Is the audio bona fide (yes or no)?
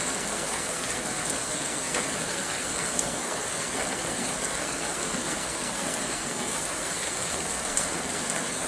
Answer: no